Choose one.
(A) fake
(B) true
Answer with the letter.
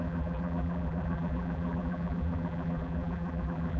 A